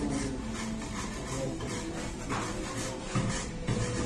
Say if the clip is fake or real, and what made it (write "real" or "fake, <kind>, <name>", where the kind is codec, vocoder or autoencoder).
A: real